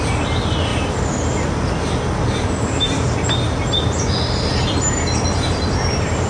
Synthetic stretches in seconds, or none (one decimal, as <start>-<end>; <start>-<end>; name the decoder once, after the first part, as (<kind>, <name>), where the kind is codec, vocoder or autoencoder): none